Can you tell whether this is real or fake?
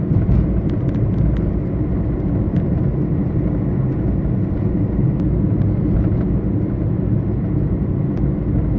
real